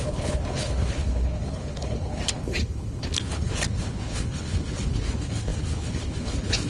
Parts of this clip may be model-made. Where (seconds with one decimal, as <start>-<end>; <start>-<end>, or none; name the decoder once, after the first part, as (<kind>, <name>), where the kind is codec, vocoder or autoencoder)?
0.0-6.7 (codec, HILCodec)